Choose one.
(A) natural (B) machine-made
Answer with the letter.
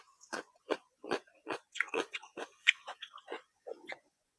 B